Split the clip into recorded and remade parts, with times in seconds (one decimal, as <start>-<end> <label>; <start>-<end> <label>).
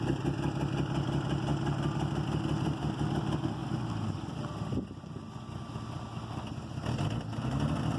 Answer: 0.0-8.0 recorded